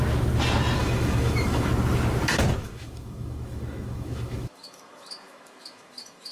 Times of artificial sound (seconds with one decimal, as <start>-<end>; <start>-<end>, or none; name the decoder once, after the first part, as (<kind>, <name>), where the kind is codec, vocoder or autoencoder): 0.8-1.7 (autoencoder, DAC-VAE); 2.6-6.3